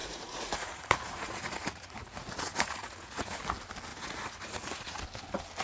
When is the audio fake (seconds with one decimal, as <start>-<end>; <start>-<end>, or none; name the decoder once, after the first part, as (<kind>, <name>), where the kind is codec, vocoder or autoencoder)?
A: 0.0-3.4 (vocoder, Vocos); 3.9-5.0